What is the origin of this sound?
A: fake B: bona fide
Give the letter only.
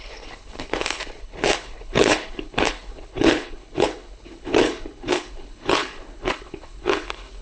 A